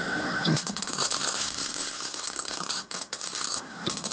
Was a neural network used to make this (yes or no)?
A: yes